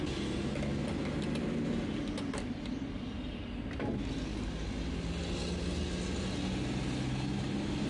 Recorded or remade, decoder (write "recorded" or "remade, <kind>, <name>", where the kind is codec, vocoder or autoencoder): recorded